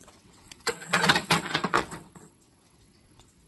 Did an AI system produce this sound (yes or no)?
yes